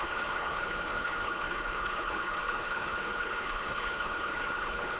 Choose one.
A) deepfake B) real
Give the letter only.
A